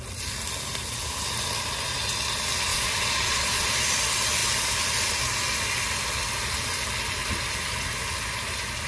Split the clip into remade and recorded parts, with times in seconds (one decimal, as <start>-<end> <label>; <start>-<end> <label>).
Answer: 0.0-2.7 recorded; 2.7-3.7 remade; 3.7-8.9 recorded